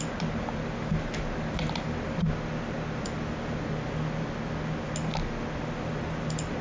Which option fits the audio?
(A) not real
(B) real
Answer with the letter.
B